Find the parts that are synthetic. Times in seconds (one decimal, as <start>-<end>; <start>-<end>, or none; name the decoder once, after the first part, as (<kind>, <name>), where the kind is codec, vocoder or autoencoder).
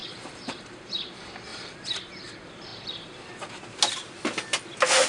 0.0-0.8 (vocoder, BigVGAN v2); 1.5-2.1